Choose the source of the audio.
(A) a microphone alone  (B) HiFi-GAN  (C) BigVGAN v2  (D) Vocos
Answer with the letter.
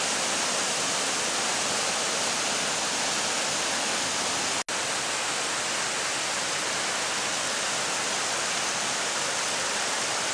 A